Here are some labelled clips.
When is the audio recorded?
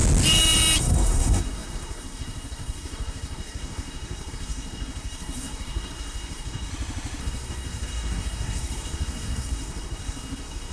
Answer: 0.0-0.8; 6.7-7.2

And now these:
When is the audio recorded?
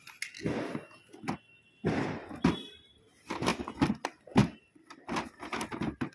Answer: 0.0-4.4; 5.1-6.1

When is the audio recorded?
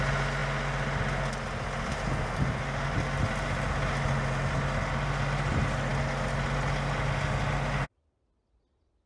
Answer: 0.0-9.1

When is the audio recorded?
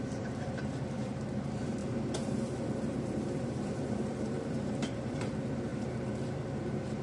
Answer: none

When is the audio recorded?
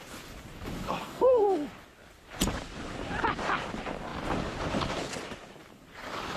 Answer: 0.0-1.0; 1.7-6.4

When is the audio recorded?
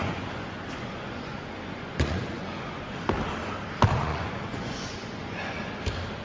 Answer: 3.0-4.0; 5.8-6.2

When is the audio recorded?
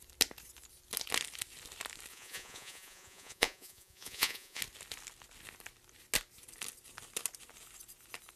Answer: 0.0-2.1; 4.6-8.4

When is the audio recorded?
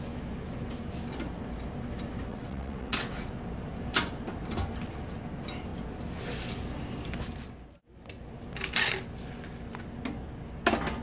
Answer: 0.0-2.3; 3.3-11.0